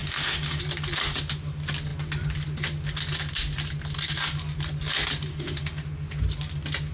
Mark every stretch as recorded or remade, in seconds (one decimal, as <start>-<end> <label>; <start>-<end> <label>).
0.0-0.6 remade; 0.6-5.3 recorded; 5.3-5.8 remade; 5.8-6.9 recorded